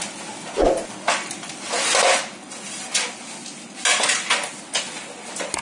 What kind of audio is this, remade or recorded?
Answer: recorded